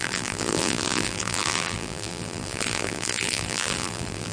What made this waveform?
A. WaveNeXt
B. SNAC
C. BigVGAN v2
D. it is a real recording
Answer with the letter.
C